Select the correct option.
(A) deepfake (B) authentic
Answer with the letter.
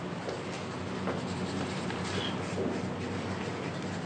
B